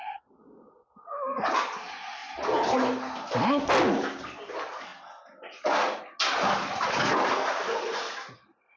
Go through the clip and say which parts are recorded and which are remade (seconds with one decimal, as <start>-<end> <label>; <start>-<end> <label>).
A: 0.0-8.8 recorded